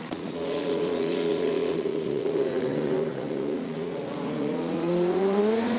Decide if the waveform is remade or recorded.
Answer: remade